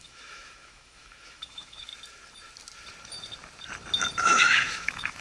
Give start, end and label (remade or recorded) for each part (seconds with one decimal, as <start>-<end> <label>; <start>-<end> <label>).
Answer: 0.0-1.9 remade; 1.9-4.2 recorded; 4.2-5.2 remade